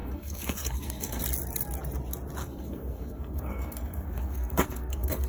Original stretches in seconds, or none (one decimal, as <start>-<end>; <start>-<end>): 1.2-2.4